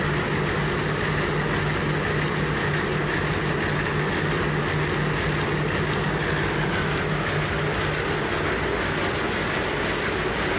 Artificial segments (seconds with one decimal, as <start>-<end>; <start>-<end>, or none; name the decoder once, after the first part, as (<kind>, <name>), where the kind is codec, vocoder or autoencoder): none